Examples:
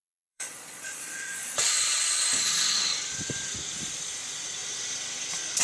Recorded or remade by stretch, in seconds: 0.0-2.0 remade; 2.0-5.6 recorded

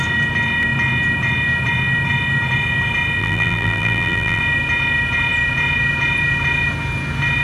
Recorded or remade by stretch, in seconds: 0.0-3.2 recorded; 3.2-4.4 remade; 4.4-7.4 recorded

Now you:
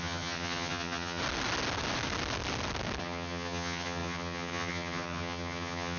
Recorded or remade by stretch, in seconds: 0.0-1.2 remade; 1.2-3.0 recorded; 3.0-6.0 remade